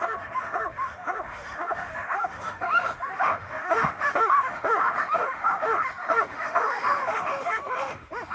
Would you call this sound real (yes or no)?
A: no